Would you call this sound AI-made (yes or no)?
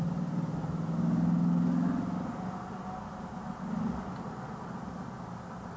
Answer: no